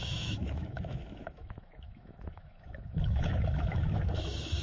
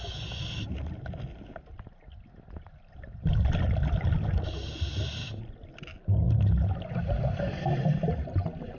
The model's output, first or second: first